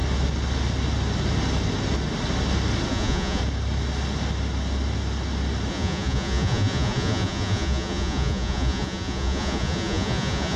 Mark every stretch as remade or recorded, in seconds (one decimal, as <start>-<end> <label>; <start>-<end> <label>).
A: 0.0-2.9 recorded; 2.9-3.4 remade; 3.4-5.7 recorded; 5.7-10.6 remade